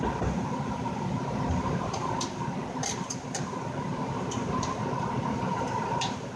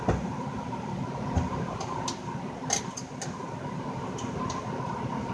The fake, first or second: first